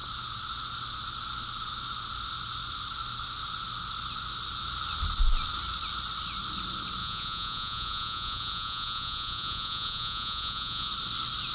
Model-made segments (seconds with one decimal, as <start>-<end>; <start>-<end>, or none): 7.0-10.9